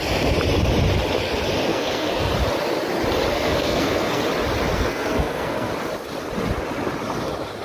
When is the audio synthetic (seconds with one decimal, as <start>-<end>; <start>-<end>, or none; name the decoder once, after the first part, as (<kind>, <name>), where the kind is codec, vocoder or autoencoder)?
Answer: 1.7-2.3 (codec, SNAC); 3.3-4.2; 4.7-5.7